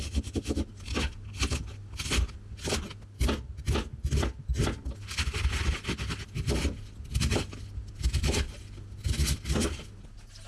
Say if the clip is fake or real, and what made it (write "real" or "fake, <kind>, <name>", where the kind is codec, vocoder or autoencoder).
real